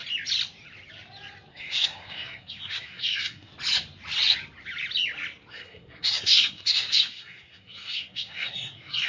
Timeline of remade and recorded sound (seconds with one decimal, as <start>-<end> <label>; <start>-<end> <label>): 0.0-1.5 recorded; 1.5-3.5 remade; 3.5-5.5 recorded; 5.5-9.1 remade